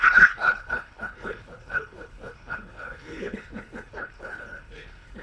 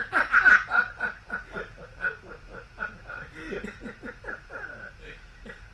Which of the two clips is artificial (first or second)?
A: first